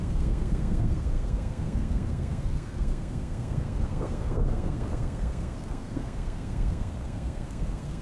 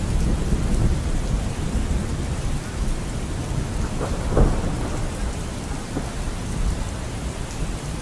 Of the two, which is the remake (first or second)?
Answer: first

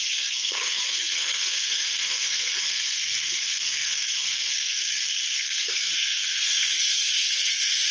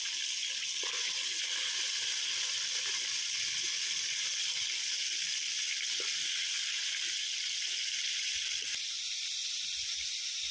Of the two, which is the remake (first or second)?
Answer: first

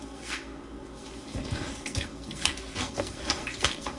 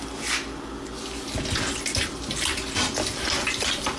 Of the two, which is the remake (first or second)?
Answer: first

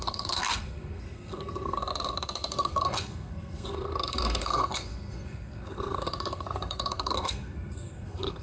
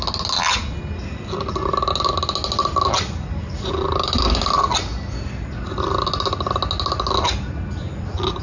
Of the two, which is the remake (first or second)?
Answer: first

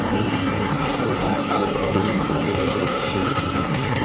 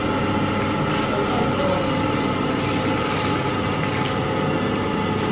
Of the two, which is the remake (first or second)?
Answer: first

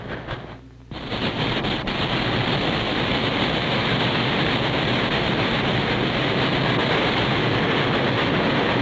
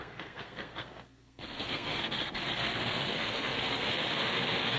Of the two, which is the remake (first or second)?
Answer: second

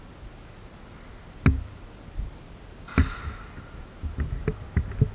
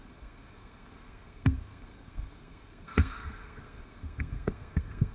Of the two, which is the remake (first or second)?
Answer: second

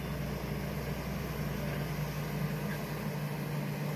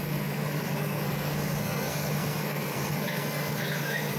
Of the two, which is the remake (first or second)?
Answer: second